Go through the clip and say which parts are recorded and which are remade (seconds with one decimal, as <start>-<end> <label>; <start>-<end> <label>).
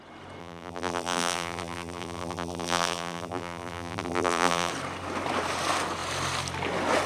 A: 0.0-0.4 recorded; 0.4-4.7 remade; 4.7-7.1 recorded